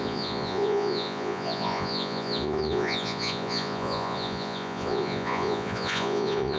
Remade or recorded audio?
remade